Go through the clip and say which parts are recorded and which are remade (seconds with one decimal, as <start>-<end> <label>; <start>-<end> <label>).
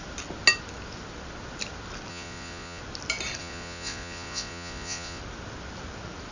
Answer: 0.0-2.1 recorded; 2.1-2.8 remade; 2.8-3.4 recorded; 3.4-5.2 remade; 5.2-6.3 recorded